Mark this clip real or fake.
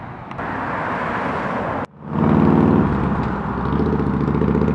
real